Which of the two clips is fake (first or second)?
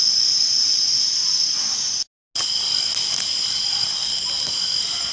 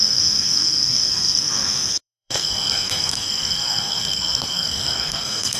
second